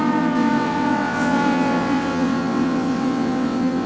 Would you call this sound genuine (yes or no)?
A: no